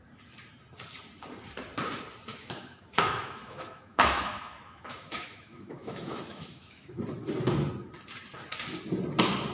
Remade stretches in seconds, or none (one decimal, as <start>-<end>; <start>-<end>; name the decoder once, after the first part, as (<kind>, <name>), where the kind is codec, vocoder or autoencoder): 2.3-7.0 (autoencoder, DAC-VAE)

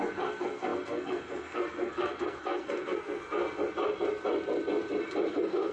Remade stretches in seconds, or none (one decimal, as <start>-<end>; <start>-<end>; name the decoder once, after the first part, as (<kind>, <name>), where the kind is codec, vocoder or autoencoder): 0.0-3.4 (codec, SNAC); 5.3-5.7

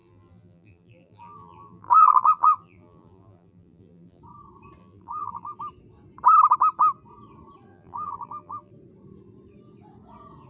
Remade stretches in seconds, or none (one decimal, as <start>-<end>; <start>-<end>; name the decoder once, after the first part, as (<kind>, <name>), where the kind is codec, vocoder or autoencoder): 0.0-4.2 (vocoder, BigVGAN v2); 4.8-5.6; 7.7-8.7

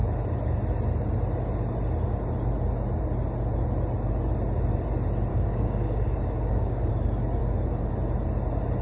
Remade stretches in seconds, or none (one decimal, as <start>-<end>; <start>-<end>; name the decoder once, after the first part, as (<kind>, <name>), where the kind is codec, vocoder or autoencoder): 5.3-6.9 (codec, DAC); 7.4-7.9

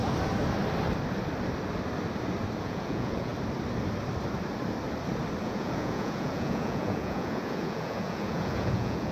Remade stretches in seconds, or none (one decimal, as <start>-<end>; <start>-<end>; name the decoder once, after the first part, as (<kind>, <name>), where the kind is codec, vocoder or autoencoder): 2.6-3.3 (vocoder, Vocos); 5.4-9.1